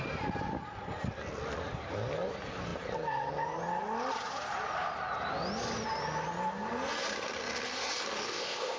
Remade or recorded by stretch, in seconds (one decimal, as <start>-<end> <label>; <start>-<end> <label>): 0.0-8.3 recorded; 8.3-8.8 remade